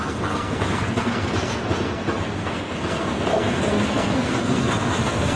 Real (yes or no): no